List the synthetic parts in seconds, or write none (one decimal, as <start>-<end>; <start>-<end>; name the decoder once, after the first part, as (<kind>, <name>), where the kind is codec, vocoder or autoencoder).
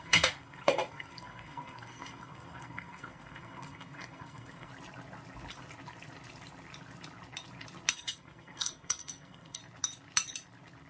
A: 0.0-4.7 (codec, SNAC); 7.9-9.6